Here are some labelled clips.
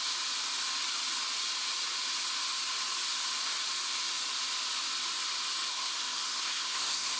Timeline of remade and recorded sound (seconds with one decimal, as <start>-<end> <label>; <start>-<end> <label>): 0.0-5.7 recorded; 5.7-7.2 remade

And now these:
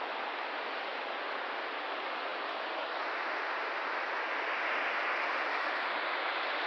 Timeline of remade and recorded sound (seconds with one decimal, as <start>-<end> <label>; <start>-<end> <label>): 0.0-6.7 recorded

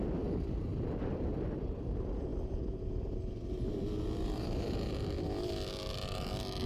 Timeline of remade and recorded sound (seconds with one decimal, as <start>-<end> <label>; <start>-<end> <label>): 0.0-6.7 recorded